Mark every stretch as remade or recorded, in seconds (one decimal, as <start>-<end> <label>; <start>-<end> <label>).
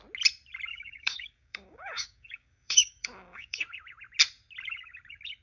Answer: 0.0-0.7 recorded; 0.7-3.6 remade; 3.6-5.4 recorded